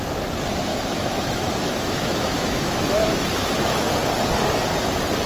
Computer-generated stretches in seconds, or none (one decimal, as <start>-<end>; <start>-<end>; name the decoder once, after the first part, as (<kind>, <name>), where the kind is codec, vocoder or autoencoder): 0.7-3.9 (autoencoder, DAC-VAE)